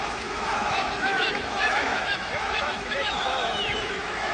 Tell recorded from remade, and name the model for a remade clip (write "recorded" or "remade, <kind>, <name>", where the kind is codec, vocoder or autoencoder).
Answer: remade, autoencoder, DAC-VAE